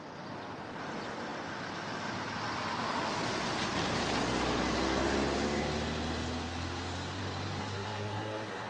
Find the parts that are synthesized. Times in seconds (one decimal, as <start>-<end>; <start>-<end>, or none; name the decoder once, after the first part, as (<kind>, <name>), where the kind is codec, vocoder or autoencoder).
7.6-8.7 (codec, SNAC)